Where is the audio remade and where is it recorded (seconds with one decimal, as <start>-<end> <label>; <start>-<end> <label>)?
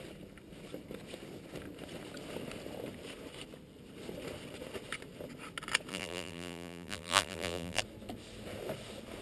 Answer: 0.0-5.9 recorded; 5.9-7.8 remade; 7.8-9.2 recorded